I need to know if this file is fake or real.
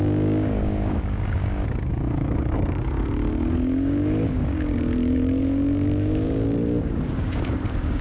fake